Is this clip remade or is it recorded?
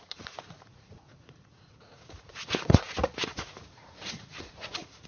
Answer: remade